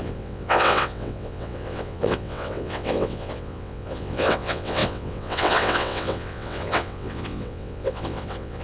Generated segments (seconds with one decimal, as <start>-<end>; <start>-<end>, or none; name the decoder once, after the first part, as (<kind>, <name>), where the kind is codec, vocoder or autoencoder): 0.0-8.6 (vocoder, WaveNeXt)